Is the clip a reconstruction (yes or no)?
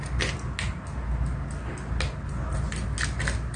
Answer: no